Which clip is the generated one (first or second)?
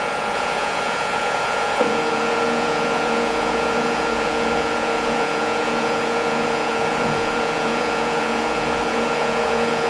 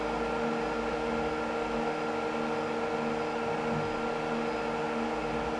first